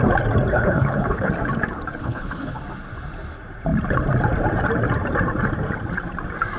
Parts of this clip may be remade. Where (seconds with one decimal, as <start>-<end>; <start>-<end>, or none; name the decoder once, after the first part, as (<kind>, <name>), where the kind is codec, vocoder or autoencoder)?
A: 0.5-1.3 (codec, HILCodec); 2.0-2.6